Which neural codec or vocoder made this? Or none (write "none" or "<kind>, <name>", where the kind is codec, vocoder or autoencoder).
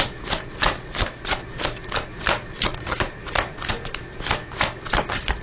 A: none